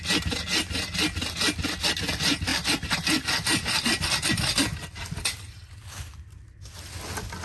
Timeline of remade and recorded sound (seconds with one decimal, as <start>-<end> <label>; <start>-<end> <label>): 0.0-7.4 recorded

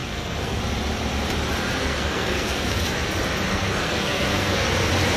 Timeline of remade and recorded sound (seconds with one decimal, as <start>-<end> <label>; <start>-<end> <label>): 0.0-0.6 remade; 0.6-1.8 recorded; 1.8-3.1 remade; 3.1-3.5 recorded; 3.5-4.7 remade; 4.7-5.2 recorded

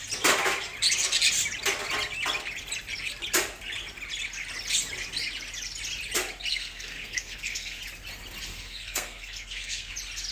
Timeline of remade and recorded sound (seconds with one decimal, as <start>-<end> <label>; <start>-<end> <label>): 0.0-6.5 recorded; 6.5-7.8 remade; 7.8-8.5 recorded; 8.5-9.9 remade; 9.9-10.3 recorded

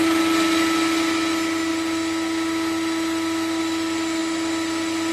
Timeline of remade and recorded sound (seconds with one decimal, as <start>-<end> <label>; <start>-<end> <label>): 0.0-5.1 recorded

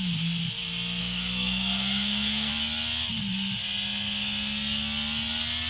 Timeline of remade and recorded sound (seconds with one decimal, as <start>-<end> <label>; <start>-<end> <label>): 0.0-1.0 recorded; 1.0-2.5 remade; 2.5-5.7 recorded

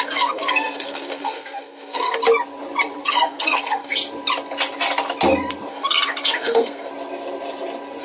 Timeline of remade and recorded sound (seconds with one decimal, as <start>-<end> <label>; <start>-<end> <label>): 0.0-2.2 remade; 2.2-3.0 recorded; 3.0-3.9 remade; 3.9-5.7 recorded; 5.7-6.9 remade; 6.9-8.0 recorded